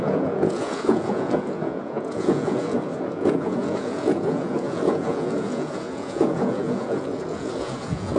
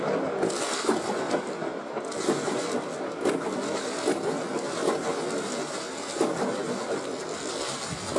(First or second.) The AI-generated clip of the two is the first